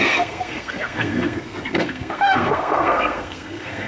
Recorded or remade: remade